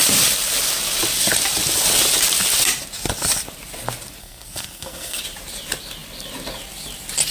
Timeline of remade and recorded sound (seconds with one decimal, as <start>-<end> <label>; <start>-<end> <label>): 0.0-4.2 recorded; 4.2-5.2 remade; 5.2-7.3 recorded